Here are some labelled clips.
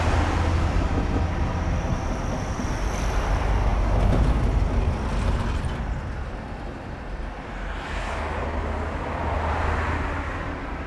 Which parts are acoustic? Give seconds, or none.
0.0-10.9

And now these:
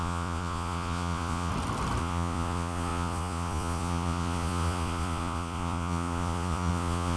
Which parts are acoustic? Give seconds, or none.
1.5-2.0

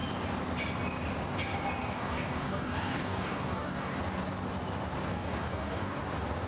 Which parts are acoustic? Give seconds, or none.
0.0-1.8; 4.0-5.1; 6.0-6.5